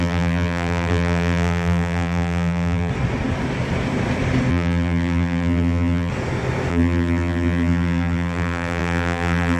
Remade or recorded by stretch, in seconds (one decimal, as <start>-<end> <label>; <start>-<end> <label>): 0.0-2.9 remade; 2.9-4.5 recorded; 4.5-6.1 remade; 6.1-6.7 recorded; 6.7-9.6 remade